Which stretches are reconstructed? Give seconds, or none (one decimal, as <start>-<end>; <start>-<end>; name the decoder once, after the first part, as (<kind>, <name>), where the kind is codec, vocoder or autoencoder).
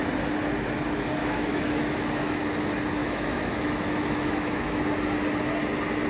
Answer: 1.2-2.4 (autoencoder, DAC-VAE); 3.0-4.8